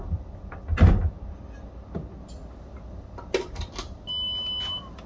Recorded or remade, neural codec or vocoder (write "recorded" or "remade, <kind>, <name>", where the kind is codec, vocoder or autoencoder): recorded